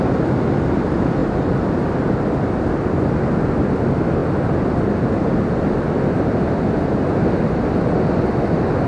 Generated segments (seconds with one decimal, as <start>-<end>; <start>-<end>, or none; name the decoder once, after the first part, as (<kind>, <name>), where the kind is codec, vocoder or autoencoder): none